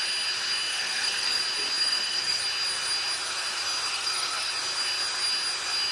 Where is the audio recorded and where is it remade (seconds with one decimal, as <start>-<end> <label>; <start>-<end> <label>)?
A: 0.0-0.7 recorded; 0.7-1.4 remade; 1.4-1.8 recorded; 1.8-2.4 remade; 2.4-3.9 recorded; 3.9-4.5 remade; 4.5-5.9 recorded